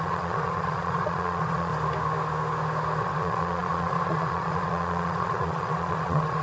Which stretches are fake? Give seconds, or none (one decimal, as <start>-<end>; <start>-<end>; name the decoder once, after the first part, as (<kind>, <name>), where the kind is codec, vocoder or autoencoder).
0.0-1.7 (vocoder, Vocos); 3.0-6.4